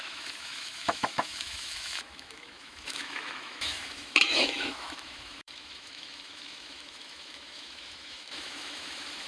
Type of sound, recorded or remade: remade